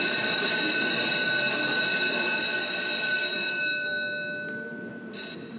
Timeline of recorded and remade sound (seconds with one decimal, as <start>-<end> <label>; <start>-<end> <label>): 0.0-5.6 recorded